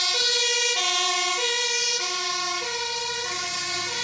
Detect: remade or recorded recorded